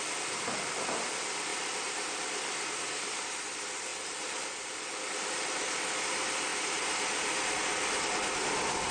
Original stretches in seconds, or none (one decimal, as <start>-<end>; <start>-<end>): 0.0-1.5; 3.2-6.5; 7.6-8.9